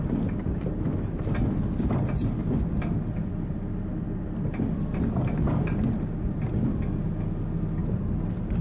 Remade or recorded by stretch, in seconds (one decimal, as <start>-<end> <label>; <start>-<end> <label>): 0.0-0.5 recorded; 0.5-2.0 remade; 2.0-2.4 recorded; 2.4-6.8 remade; 6.8-7.8 recorded; 7.8-8.6 remade